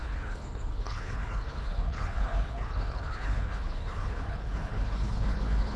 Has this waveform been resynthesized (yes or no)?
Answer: yes